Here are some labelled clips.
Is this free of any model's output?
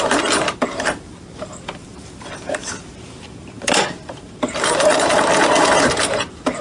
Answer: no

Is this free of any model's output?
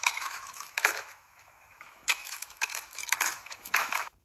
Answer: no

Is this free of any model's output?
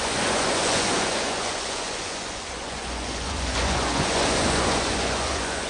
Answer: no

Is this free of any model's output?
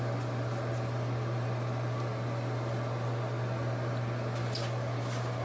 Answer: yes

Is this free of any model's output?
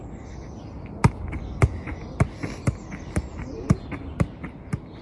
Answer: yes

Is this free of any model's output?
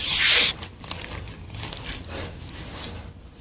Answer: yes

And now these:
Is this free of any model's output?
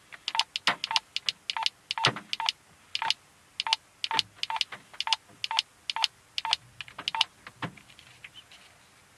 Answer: yes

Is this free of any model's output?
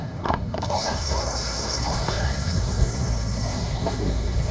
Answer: no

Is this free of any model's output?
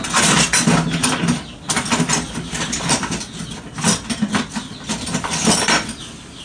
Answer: yes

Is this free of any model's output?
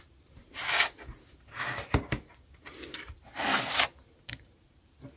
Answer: no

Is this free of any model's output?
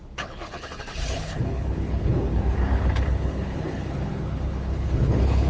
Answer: no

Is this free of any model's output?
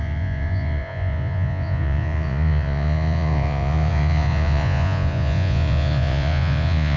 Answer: no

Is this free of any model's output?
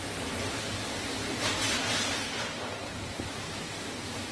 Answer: no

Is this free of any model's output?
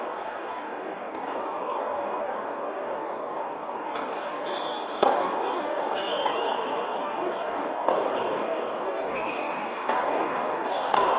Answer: no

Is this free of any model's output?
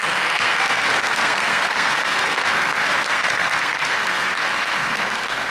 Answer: no